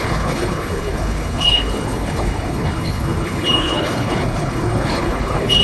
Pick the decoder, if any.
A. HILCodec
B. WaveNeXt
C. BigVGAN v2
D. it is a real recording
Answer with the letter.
A